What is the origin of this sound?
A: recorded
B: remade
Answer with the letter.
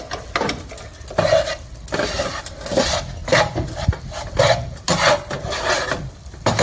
A